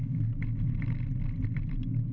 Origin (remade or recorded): recorded